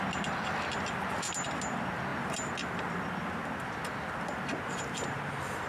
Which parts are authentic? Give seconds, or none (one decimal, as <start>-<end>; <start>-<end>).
0.0-5.7